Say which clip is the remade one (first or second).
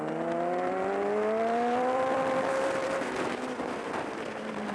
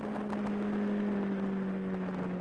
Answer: first